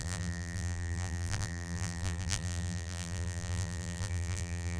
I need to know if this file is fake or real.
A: fake